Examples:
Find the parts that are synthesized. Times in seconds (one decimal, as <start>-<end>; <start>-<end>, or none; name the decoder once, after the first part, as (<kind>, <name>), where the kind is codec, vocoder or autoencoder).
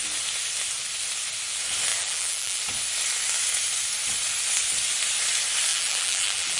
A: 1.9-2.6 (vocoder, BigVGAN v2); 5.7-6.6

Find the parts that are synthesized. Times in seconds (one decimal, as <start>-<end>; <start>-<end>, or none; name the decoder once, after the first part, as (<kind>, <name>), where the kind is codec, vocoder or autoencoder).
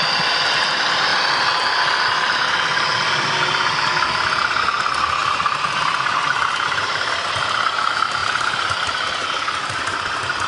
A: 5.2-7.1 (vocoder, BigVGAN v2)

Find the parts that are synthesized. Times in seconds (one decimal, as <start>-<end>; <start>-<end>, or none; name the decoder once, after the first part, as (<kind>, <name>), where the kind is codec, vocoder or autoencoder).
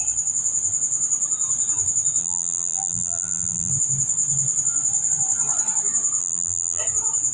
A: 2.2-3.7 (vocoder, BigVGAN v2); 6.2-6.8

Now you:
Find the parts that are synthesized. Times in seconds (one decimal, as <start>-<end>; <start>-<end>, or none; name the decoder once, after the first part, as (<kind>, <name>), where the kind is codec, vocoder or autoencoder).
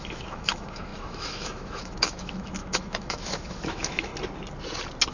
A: 0.0-4.1 (autoencoder, DAC-VAE)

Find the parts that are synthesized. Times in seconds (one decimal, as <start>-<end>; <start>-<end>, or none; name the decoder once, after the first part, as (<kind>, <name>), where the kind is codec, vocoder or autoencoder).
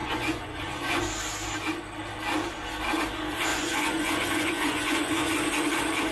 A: 0.0-1.0 (vocoder, Vocos); 3.5-5.3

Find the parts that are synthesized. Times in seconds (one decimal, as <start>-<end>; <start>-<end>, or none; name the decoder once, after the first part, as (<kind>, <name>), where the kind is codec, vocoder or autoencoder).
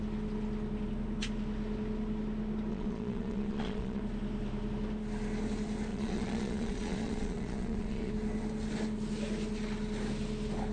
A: 2.7-4.0 (vocoder, Vocos); 5.9-8.1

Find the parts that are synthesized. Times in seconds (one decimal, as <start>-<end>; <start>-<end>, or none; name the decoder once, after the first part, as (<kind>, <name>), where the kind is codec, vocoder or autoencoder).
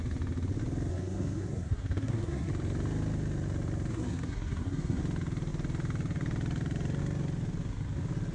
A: 0.9-2.5 (codec, SNAC); 3.9-5.0